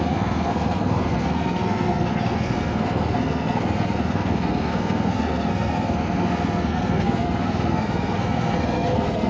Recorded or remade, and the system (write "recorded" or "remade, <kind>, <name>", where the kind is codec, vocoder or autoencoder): remade, codec, SNAC